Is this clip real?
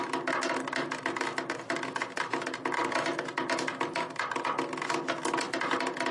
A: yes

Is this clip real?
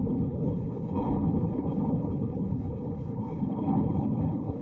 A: no